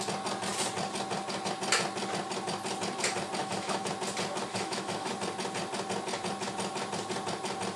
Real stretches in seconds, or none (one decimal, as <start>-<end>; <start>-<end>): 0.0-3.4; 3.9-4.5; 5.1-7.8